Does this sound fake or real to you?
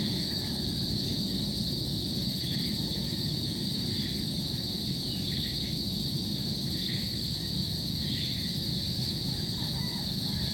fake